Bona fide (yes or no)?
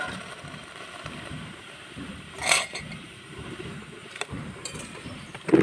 no